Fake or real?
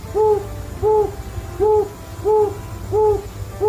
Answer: real